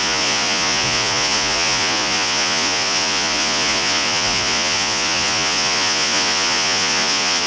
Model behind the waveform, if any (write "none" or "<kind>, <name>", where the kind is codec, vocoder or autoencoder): vocoder, Vocos